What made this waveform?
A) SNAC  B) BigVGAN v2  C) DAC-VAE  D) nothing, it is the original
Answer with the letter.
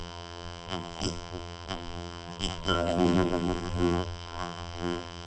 B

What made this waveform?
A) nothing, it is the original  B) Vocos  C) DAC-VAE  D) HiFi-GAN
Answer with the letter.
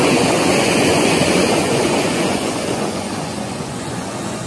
B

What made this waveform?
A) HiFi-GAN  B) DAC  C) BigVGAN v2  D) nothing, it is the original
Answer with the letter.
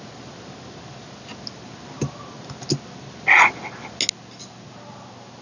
D